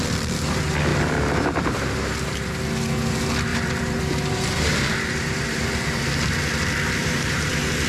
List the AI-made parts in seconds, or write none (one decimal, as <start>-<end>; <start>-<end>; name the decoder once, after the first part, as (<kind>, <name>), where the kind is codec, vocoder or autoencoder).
0.9-2.6 (vocoder, BigVGAN v2); 3.5-6.3; 7.0-7.5